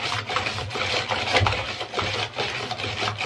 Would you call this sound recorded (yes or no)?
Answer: no